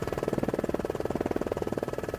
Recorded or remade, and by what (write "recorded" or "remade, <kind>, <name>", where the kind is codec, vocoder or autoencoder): remade, vocoder, BigVGAN v2